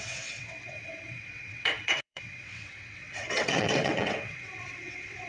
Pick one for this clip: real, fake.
fake